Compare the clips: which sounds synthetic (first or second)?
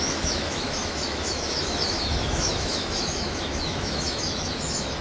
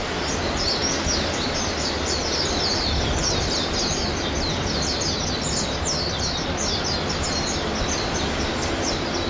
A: first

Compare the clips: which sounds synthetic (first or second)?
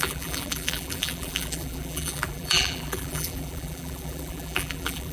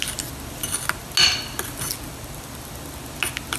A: first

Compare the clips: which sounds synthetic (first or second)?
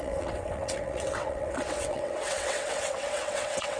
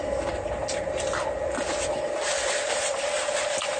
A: first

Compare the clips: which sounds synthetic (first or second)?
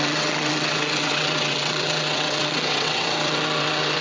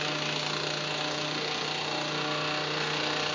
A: first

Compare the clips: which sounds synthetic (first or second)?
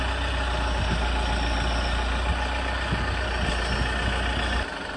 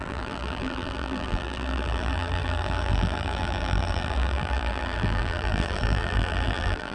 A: second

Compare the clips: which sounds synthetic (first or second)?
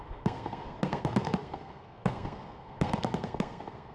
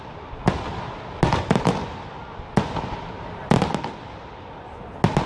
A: first